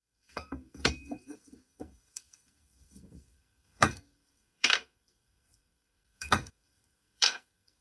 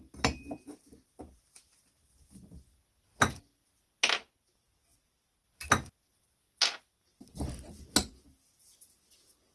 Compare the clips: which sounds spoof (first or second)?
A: first